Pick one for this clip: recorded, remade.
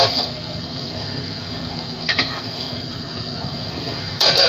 remade